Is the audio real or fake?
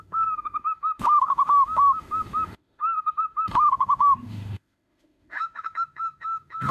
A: fake